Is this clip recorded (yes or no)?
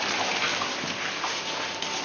yes